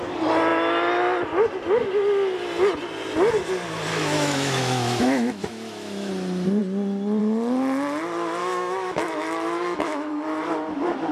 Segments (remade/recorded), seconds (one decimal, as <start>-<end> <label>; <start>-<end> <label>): 0.0-3.9 recorded; 3.9-6.1 remade; 6.1-8.4 recorded; 8.4-10.1 remade; 10.1-11.1 recorded